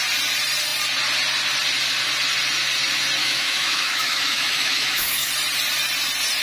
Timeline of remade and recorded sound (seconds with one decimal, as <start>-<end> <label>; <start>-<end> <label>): 0.0-3.2 recorded; 3.2-5.3 remade; 5.3-6.4 recorded

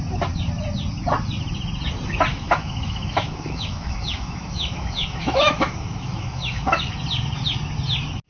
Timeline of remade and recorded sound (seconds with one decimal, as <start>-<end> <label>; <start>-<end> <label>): 0.0-2.3 recorded; 2.3-6.9 remade; 6.9-8.3 recorded